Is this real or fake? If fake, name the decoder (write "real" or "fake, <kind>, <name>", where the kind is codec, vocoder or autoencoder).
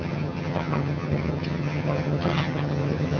fake, vocoder, HiFi-GAN